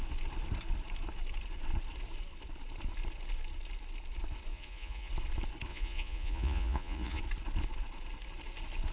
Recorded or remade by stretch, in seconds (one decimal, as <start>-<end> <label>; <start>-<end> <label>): 0.0-4.5 recorded; 4.5-5.1 remade; 5.1-5.7 recorded; 5.7-7.2 remade; 7.2-8.9 recorded